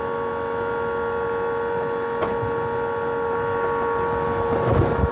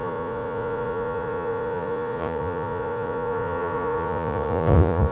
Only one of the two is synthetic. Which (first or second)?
second